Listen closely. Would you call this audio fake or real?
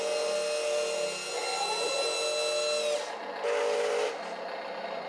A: real